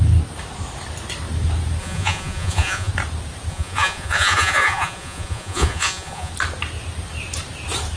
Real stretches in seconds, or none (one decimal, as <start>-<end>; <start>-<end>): 0.0-1.8; 2.9-3.5; 6.3-8.0